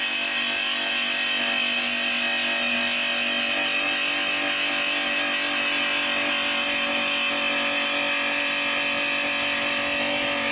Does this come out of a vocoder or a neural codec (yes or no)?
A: no